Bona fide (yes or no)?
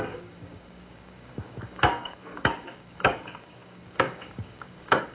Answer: no